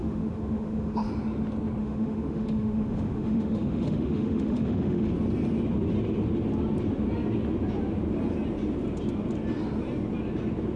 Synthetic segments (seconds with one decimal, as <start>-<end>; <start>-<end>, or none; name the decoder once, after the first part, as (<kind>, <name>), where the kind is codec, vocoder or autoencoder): 0.0-1.1 (autoencoder, DAC-VAE); 1.8-5.1